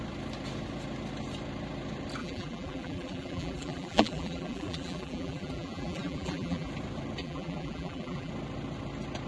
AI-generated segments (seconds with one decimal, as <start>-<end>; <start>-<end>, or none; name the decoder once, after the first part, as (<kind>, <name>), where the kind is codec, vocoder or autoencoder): 2.2-6.7 (vocoder, BigVGAN v2); 7.2-8.3